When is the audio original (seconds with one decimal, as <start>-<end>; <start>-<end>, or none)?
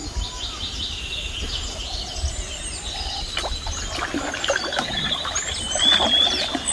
0.0-6.7